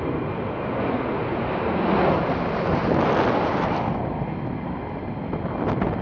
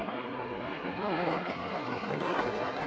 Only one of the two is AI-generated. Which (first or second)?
second